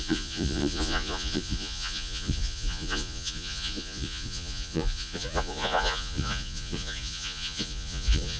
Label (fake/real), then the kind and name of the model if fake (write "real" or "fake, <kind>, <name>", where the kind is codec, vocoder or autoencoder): fake, vocoder, Vocos